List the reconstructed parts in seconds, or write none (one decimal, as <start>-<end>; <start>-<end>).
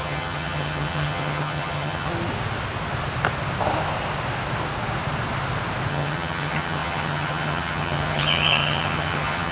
0.0-2.1; 5.9-9.5